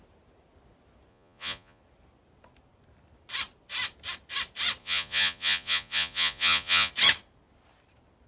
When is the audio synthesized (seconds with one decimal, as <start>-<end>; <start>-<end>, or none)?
1.1-1.8; 4.8-6.9